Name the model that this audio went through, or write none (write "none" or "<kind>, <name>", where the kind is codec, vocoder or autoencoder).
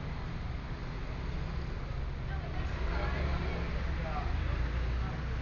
none